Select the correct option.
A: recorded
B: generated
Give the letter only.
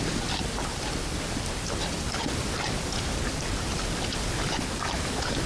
A